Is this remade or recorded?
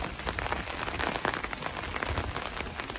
recorded